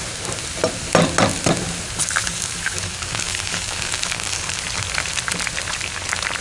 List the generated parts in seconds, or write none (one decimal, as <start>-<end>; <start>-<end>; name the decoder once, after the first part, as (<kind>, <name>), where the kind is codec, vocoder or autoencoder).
2.2-4.6 (codec, DAC)